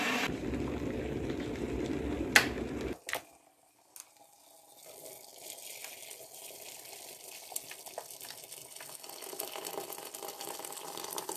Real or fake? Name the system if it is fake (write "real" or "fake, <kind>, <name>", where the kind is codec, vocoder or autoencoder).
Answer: real